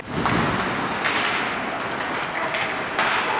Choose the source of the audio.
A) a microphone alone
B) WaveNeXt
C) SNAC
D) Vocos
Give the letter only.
A